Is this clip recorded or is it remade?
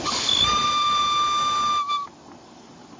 recorded